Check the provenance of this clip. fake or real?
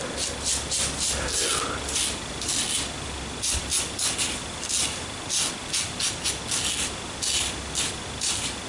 real